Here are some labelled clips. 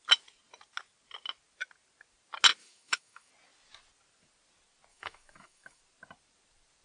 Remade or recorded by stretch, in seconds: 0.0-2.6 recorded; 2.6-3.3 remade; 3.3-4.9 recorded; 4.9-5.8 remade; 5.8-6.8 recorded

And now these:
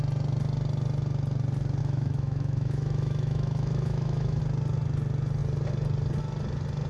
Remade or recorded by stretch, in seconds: 0.0-1.8 recorded; 1.8-4.4 remade; 4.4-6.9 recorded

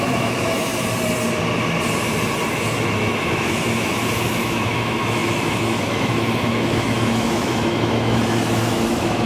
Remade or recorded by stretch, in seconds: 0.0-0.7 remade; 0.7-2.5 recorded; 2.5-9.3 remade